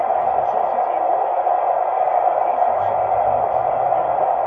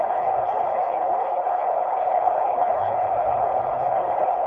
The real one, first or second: first